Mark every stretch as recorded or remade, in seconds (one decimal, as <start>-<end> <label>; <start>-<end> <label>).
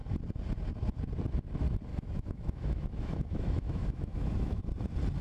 0.0-1.9 recorded; 1.9-4.6 remade; 4.6-5.2 recorded